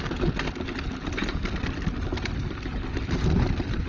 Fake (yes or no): no